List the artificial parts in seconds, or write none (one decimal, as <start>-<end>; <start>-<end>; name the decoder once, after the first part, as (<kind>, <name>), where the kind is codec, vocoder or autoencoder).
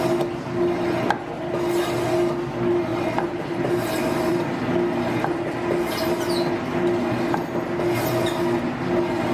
2.9-4.6 (vocoder, BigVGAN v2)